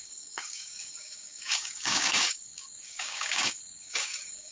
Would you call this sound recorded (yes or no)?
no